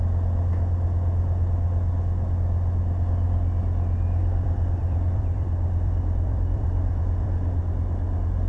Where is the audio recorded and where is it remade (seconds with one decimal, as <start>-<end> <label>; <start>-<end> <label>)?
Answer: 0.0-4.2 recorded; 4.2-7.6 remade; 7.6-8.5 recorded